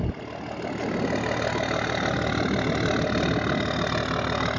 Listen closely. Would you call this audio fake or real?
real